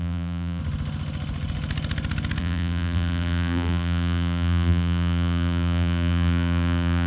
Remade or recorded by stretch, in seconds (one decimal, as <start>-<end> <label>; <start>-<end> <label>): 0.0-0.6 remade; 0.6-2.4 recorded; 2.4-7.1 remade